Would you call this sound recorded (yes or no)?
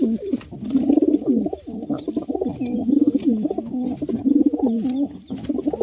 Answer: yes